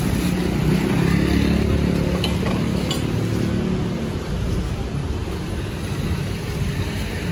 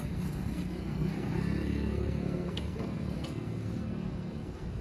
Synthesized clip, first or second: second